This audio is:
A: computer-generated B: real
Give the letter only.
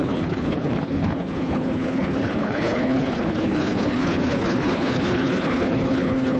A